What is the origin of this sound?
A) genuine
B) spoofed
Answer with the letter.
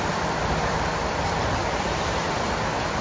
A